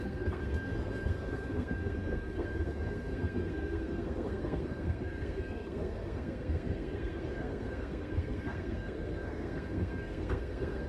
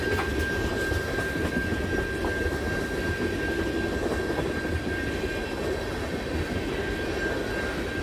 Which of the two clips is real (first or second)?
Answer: second